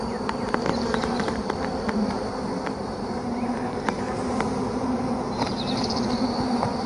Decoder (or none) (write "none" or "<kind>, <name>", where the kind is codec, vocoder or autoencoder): vocoder, BigVGAN v2